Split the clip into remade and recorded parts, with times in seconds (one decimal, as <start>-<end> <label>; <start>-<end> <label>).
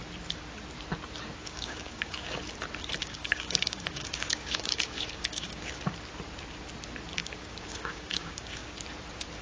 0.0-1.4 recorded; 1.4-2.4 remade; 2.4-3.0 recorded; 3.0-5.8 remade; 5.8-7.2 recorded; 7.2-8.8 remade; 8.8-9.4 recorded